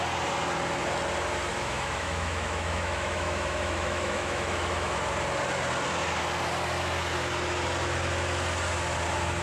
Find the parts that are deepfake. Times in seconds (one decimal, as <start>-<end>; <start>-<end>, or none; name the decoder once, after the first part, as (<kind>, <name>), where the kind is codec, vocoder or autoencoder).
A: 1.5-5.0 (autoencoder, DAC-VAE)